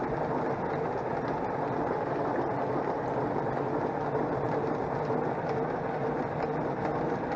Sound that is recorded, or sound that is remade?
recorded